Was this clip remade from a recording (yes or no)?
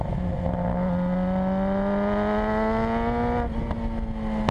no